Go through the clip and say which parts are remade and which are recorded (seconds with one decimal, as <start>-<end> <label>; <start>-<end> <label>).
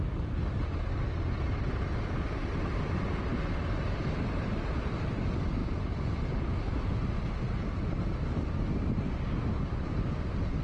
0.0-5.6 remade; 5.6-9.4 recorded; 9.4-10.6 remade